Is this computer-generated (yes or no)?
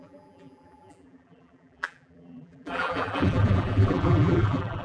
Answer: yes